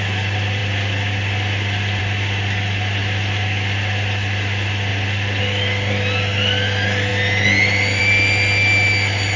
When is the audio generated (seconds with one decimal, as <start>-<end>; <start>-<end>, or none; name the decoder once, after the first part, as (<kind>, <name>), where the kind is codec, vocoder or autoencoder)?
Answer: none